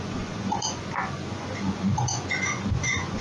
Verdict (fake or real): fake